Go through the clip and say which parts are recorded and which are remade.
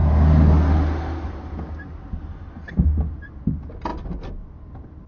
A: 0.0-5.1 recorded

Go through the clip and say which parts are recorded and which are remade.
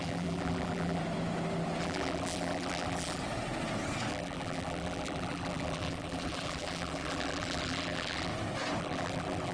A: 0.0-1.0 remade; 1.0-1.8 recorded; 1.8-3.2 remade; 3.2-4.1 recorded; 4.1-8.3 remade; 8.3-8.8 recorded; 8.8-9.5 remade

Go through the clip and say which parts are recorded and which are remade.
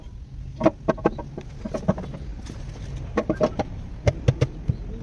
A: 0.0-2.3 recorded; 2.3-3.9 remade; 3.9-5.0 recorded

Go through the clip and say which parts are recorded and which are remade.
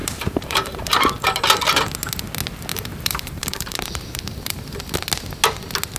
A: 0.0-0.9 remade; 0.9-2.7 recorded; 2.7-4.8 remade; 4.8-6.0 recorded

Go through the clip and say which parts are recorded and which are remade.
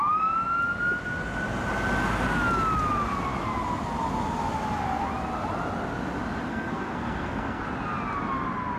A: 0.0-6.5 recorded; 6.5-7.6 remade; 7.6-8.8 recorded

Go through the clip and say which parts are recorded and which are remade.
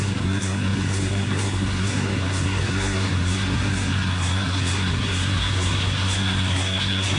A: 0.0-7.2 remade